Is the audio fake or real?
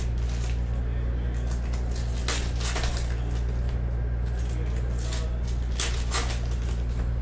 real